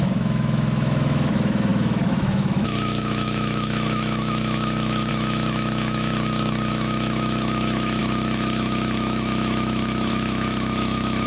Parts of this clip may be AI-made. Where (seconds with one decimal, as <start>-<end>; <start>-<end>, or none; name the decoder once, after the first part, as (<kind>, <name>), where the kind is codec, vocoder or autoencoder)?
0.0-6.1 (autoencoder, DAC-VAE); 6.7-11.3